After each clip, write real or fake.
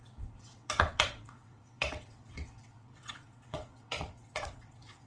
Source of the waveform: fake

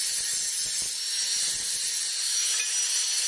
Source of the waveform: real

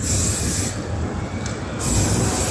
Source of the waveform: real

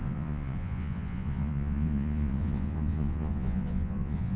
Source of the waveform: fake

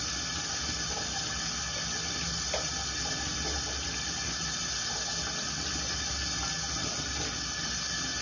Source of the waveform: real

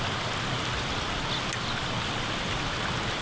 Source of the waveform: real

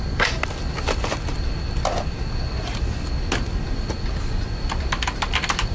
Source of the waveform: real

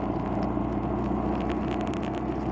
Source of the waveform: real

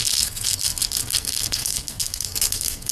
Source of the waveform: fake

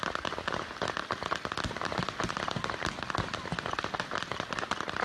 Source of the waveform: real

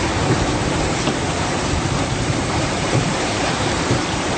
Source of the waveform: fake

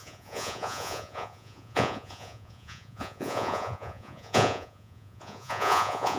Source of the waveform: fake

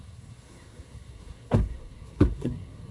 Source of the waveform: fake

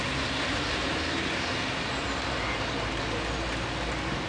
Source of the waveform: real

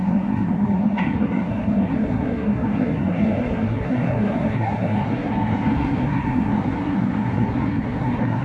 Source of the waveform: fake